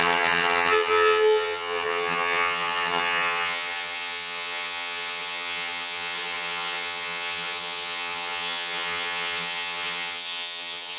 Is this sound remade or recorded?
remade